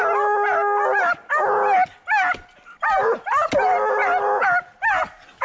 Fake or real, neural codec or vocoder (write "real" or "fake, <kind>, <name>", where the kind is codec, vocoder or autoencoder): real